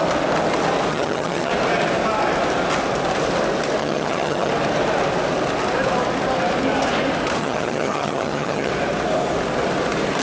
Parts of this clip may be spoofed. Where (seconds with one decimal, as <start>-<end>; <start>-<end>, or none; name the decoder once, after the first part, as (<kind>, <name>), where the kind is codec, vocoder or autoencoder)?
0.9-1.5 (vocoder, HiFi-GAN); 3.8-4.5; 7.4-8.7